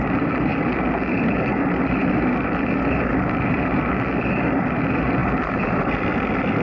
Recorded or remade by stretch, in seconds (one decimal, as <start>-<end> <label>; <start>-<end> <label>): 0.0-6.6 recorded